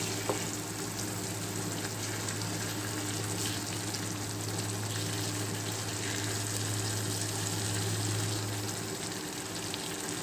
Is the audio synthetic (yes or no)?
no